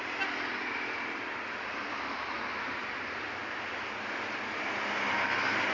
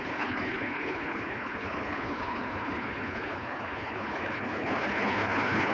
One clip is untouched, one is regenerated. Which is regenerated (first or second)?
second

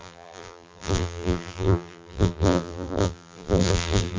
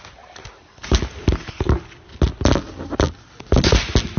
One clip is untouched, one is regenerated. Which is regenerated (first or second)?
first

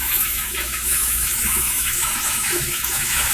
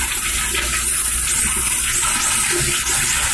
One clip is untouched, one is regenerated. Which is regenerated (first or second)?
first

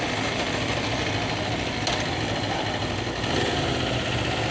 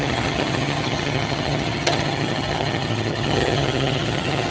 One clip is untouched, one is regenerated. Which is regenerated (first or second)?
second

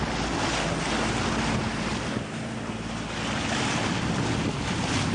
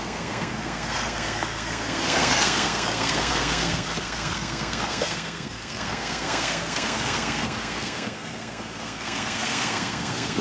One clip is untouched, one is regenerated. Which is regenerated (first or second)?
second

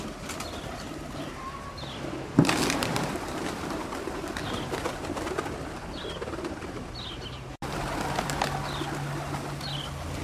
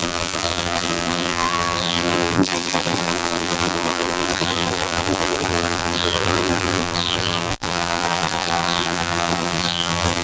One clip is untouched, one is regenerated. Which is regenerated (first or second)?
second